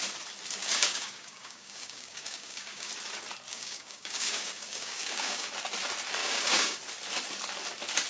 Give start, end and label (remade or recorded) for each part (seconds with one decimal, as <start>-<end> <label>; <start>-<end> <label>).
0.0-0.6 recorded; 0.6-2.9 remade; 2.9-3.5 recorded; 3.5-5.5 remade; 5.5-6.2 recorded; 6.2-6.8 remade; 6.8-8.1 recorded